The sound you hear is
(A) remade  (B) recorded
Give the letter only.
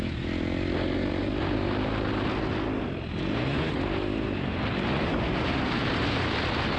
B